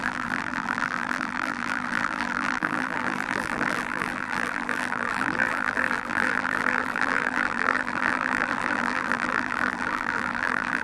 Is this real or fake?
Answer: fake